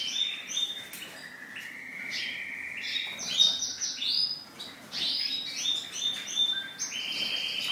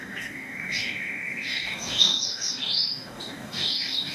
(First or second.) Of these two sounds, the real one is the first